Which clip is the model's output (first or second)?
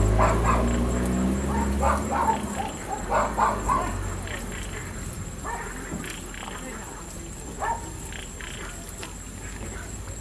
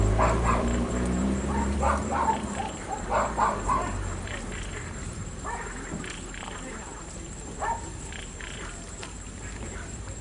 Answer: second